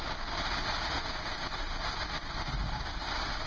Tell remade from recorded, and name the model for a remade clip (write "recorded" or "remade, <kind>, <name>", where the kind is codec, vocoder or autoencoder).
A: recorded